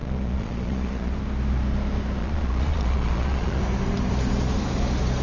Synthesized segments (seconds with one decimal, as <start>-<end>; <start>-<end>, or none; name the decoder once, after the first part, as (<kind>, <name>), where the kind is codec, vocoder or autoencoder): 0.0-1.1 (vocoder, Vocos); 2.2-3.6